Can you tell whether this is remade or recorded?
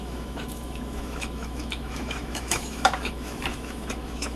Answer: remade